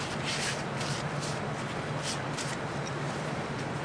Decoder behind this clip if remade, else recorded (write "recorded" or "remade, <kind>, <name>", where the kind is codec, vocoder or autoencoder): remade, vocoder, BigVGAN v2